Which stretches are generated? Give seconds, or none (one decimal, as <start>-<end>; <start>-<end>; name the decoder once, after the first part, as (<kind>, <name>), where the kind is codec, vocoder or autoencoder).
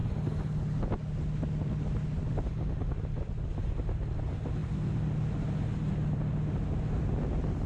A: none